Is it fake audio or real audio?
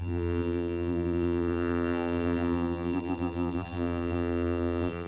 fake